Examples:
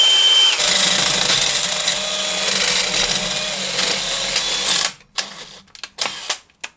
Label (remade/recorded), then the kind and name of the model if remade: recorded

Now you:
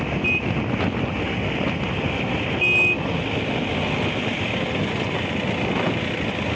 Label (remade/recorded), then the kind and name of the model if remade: recorded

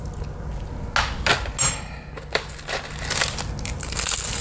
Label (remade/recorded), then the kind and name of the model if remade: recorded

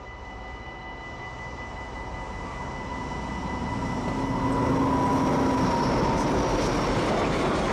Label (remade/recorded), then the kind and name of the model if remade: recorded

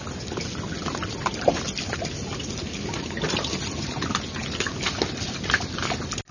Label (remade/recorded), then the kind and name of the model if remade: recorded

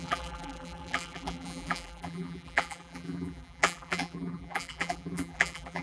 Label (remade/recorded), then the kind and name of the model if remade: remade, vocoder, BigVGAN v2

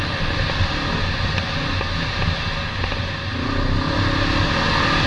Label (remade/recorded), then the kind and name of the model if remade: recorded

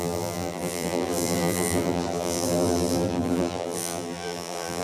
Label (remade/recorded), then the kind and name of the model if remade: remade, vocoder, BigVGAN v2